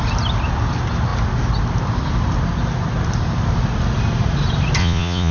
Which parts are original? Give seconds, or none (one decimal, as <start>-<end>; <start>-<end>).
0.0-4.8